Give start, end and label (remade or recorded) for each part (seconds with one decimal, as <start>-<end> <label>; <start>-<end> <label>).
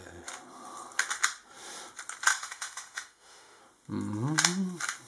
0.0-2.3 recorded; 2.3-3.6 remade; 3.6-5.1 recorded